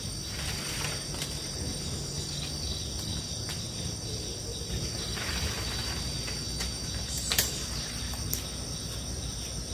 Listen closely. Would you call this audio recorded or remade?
recorded